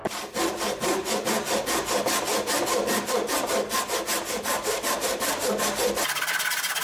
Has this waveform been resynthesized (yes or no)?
no